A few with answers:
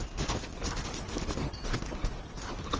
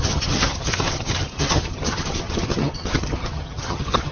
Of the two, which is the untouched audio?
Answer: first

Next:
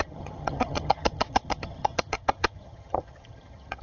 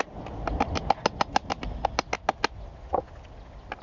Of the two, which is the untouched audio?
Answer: second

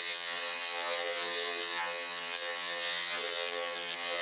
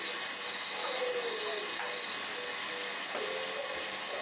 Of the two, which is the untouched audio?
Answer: second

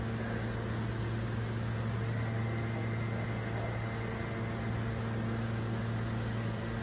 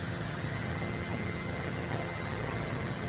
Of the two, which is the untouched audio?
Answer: first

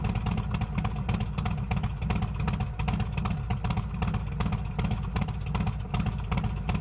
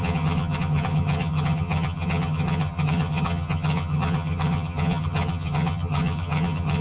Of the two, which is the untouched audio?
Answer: first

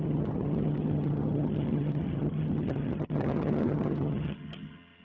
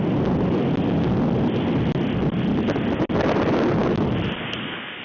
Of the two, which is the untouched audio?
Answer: second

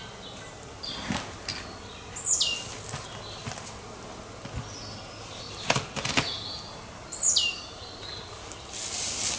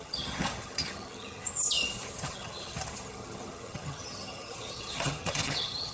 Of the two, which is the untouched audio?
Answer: first